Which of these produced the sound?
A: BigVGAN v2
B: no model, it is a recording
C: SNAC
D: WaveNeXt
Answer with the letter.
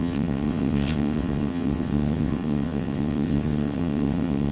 D